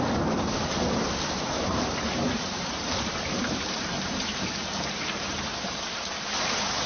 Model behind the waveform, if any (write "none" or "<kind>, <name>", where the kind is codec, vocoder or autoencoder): vocoder, BigVGAN v2